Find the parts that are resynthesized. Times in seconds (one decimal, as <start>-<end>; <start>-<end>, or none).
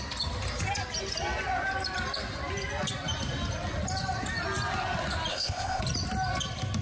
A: 5.3-5.8